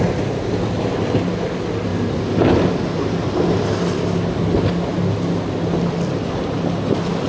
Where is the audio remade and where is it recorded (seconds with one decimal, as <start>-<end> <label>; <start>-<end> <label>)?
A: 0.0-7.3 recorded